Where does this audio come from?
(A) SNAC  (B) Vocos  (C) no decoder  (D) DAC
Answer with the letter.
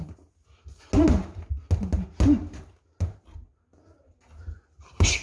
C